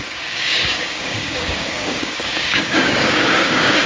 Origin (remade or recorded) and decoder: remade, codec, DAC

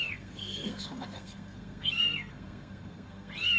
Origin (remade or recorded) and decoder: remade, codec, SNAC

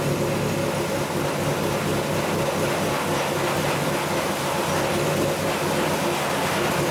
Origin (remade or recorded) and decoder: recorded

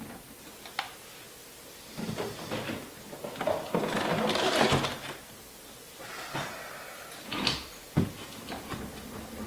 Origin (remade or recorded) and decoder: recorded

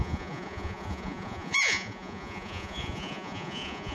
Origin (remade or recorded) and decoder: remade, vocoder, Vocos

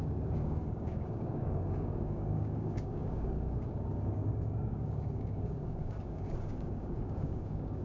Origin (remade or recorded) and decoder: remade, codec, DAC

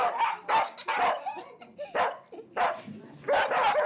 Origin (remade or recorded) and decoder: recorded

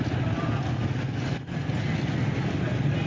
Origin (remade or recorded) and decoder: recorded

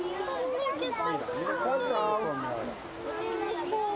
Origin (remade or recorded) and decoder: recorded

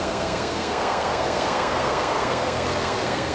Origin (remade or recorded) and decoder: remade, codec, SNAC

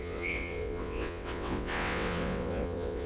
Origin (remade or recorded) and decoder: remade, vocoder, WaveNeXt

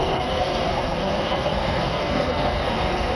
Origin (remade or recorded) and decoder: remade, codec, SNAC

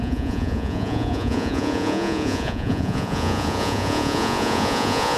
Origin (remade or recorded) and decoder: remade, vocoder, Vocos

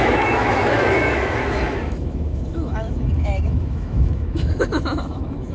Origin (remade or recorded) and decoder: remade, autoencoder, DAC-VAE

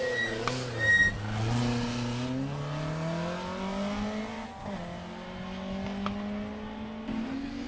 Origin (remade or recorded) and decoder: recorded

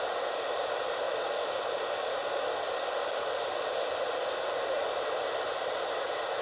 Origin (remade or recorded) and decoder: recorded